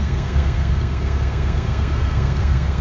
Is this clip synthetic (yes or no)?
yes